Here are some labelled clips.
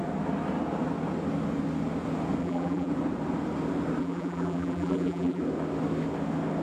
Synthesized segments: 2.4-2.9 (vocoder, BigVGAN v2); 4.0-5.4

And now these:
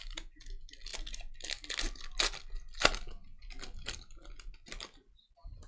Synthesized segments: none

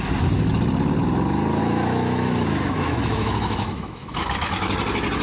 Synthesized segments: 1.6-4.7 (autoencoder, DAC-VAE)

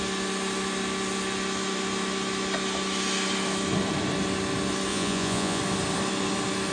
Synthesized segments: 4.9-5.6 (vocoder, Vocos)

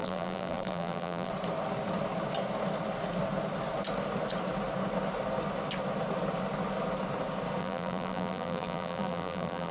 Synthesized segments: 0.0-1.3 (vocoder, BigVGAN v2); 7.6-9.7

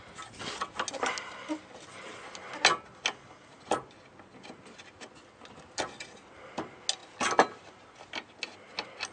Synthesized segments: none